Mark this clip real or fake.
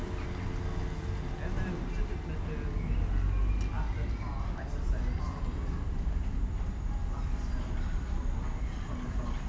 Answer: real